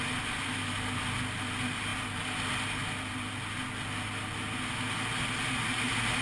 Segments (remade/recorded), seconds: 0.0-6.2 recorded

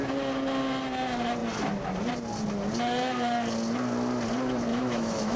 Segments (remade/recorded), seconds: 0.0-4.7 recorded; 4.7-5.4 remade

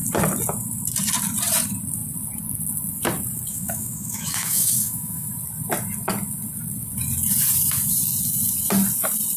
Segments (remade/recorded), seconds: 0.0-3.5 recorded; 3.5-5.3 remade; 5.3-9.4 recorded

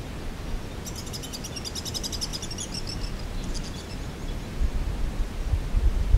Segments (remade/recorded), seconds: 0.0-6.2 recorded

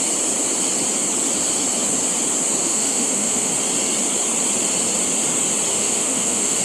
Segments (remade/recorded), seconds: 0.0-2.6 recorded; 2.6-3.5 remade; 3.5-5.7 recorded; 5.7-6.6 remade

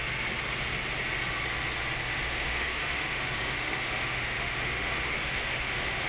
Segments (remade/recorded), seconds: 0.0-2.0 recorded; 2.0-6.1 remade

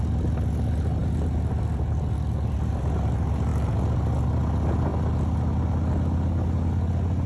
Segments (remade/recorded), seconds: 0.0-7.3 recorded

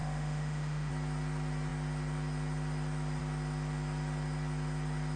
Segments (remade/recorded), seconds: 0.0-0.9 remade; 0.9-5.2 recorded